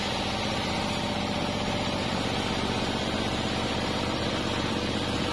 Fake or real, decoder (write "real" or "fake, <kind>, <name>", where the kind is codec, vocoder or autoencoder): fake, vocoder, BigVGAN v2